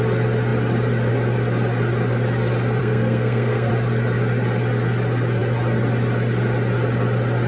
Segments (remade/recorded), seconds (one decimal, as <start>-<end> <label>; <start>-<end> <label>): 0.0-2.8 recorded; 2.8-3.7 remade; 3.7-7.5 recorded